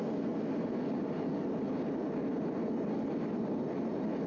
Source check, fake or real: real